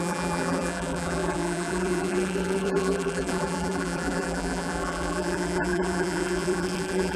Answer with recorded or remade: remade